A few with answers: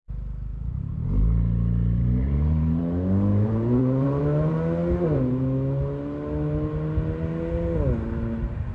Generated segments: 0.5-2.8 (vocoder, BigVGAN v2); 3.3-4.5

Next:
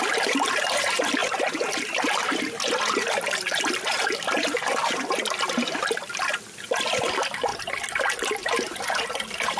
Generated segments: 0.0-1.2 (vocoder, BigVGAN v2); 6.1-8.4